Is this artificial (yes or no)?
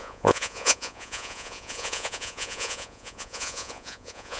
yes